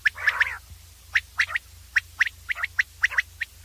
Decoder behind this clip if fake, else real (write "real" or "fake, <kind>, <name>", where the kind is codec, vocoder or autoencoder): real